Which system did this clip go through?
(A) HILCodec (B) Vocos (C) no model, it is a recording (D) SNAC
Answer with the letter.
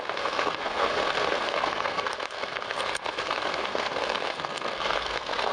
D